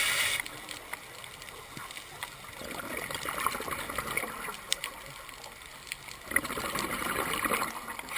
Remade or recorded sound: recorded